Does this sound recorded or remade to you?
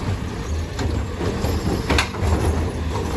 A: recorded